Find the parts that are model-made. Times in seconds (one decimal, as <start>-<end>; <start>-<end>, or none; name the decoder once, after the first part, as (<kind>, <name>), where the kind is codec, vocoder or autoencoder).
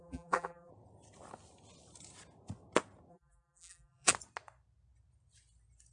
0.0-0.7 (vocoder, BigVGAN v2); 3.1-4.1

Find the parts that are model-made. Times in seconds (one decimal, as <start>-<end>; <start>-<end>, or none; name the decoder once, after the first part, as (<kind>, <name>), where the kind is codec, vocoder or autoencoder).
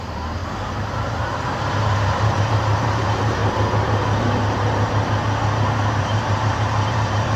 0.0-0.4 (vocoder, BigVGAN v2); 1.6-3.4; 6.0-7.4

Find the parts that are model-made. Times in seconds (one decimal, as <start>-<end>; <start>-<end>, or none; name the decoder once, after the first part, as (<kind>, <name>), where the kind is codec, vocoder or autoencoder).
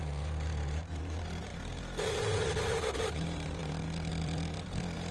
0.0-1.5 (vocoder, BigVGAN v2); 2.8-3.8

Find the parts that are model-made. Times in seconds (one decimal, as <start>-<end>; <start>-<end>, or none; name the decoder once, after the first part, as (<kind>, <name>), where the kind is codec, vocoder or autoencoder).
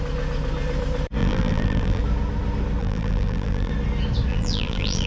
1.2-2.0 (vocoder, BigVGAN v2); 2.8-3.7; 4.3-5.1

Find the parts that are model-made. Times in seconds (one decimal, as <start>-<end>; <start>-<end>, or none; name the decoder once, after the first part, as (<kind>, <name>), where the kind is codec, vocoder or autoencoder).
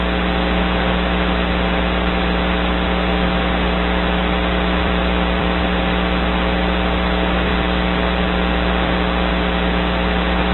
4.8-5.6 (vocoder, BigVGAN v2)